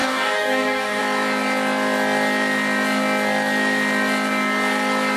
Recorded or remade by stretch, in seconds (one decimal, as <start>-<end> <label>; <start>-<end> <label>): 0.0-1.0 remade; 1.0-5.2 recorded